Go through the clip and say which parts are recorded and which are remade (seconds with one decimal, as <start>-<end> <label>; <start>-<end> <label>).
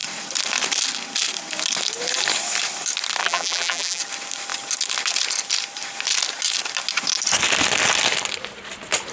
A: 0.0-3.2 recorded; 3.2-4.0 remade; 4.0-9.1 recorded